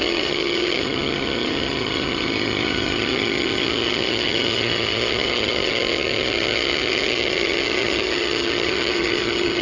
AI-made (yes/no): yes